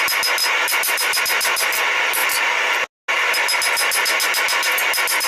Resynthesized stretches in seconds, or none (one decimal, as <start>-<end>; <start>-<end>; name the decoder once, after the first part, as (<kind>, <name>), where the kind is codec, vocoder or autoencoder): none